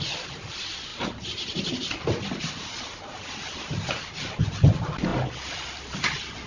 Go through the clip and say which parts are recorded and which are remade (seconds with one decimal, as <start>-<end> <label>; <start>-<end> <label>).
0.0-6.5 recorded